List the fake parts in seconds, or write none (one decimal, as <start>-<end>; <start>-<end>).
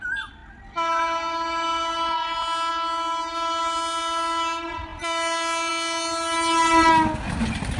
none